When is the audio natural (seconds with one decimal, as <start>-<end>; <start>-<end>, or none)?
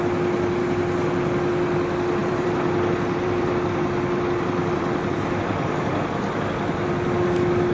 0.0-2.2; 6.5-7.7